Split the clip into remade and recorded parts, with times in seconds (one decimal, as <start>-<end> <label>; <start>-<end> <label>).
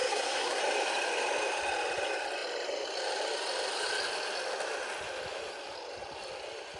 0.0-0.6 remade; 0.6-6.8 recorded